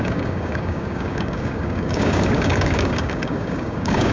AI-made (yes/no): yes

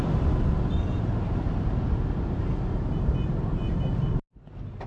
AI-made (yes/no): no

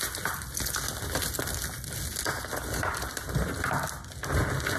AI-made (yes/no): no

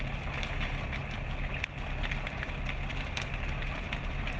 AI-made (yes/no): no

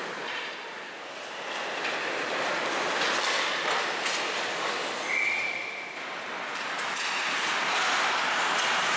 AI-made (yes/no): no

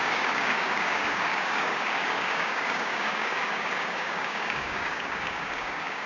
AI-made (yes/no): yes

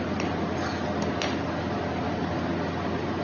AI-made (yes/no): no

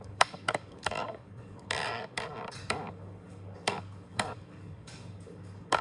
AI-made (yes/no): yes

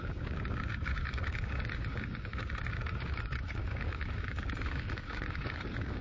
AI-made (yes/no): yes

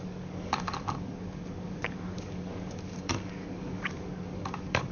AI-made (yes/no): yes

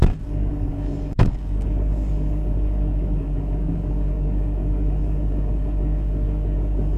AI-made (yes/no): yes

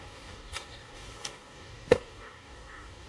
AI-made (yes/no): yes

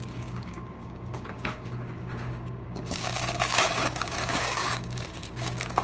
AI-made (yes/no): yes